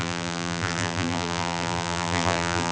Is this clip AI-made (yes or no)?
yes